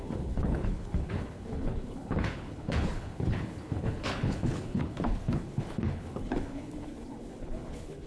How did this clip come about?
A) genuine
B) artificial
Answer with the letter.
B